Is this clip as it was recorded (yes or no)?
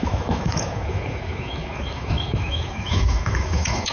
no